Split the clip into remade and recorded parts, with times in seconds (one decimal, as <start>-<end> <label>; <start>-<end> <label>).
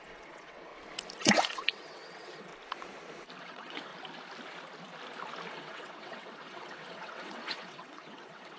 0.0-0.7 remade; 0.7-1.2 recorded; 1.2-2.5 remade; 2.5-3.4 recorded; 3.4-3.9 remade; 3.9-5.5 recorded; 5.5-8.6 remade